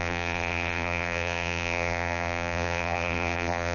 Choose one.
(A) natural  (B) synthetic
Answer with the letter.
B